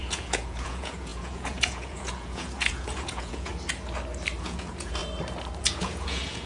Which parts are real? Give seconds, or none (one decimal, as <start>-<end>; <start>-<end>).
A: 3.5-4.4; 5.0-5.6

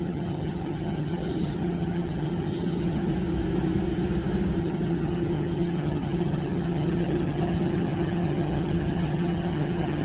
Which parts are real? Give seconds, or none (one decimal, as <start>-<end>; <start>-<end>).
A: 3.1-4.6

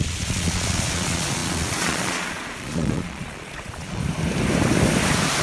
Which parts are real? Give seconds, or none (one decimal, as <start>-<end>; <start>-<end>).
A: 4.0-5.4

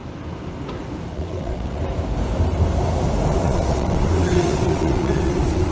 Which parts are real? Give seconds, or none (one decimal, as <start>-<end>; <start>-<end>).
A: 0.0-1.1; 1.8-3.3

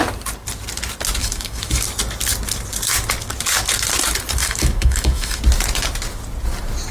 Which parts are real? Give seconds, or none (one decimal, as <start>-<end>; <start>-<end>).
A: 0.0-1.2; 1.8-4.4; 5.4-6.9

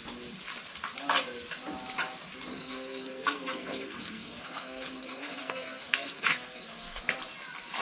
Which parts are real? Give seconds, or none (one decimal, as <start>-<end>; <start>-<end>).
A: 0.0-2.5; 7.0-7.8

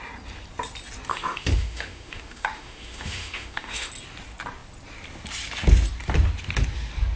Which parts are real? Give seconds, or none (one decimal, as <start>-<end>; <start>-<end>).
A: 0.0-1.1; 3.9-7.2

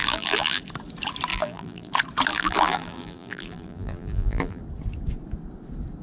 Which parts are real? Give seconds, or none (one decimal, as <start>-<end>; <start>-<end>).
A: 0.6-1.3; 1.9-2.3; 4.6-6.0